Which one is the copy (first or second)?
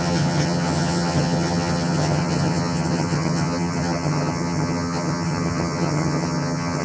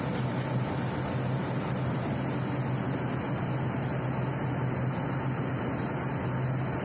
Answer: first